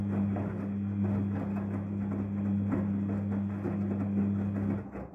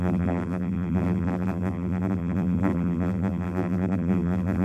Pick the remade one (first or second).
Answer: second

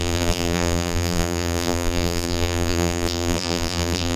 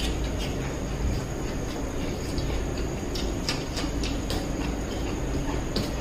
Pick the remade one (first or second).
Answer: first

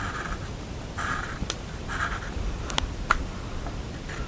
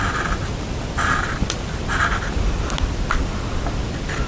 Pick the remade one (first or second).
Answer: first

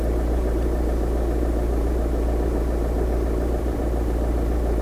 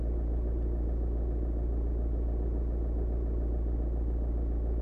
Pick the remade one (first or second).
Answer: first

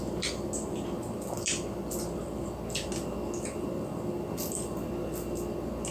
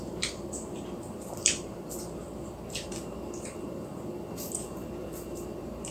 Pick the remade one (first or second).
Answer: second